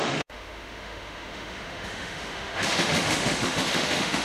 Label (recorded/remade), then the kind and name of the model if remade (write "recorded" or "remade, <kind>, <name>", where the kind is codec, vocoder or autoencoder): remade, autoencoder, DAC-VAE